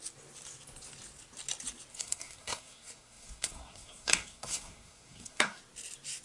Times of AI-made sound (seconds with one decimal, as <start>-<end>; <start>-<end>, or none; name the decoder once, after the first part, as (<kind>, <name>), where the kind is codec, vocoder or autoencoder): 1.9-5.6 (codec, SNAC)